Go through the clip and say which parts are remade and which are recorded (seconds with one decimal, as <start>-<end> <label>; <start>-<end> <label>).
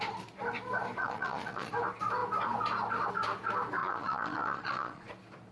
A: 0.0-1.0 recorded; 1.0-1.7 remade; 1.7-3.8 recorded; 3.8-5.1 remade; 5.1-5.5 recorded